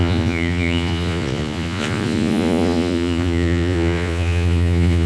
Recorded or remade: remade